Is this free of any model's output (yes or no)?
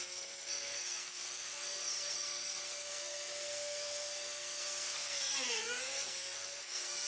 no